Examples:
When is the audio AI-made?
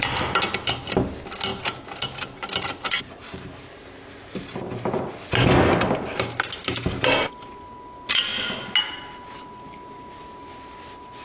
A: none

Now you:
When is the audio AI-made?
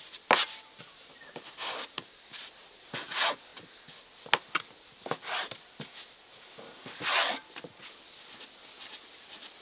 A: none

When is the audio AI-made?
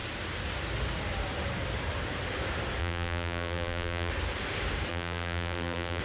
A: 2.8-4.1 (vocoder, BigVGAN v2); 4.9-6.0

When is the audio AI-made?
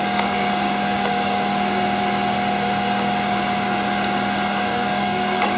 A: 0.0-1.5 (codec, DAC); 4.5-5.6